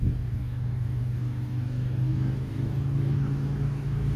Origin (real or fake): fake